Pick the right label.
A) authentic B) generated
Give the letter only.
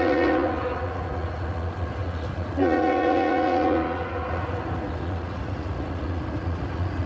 B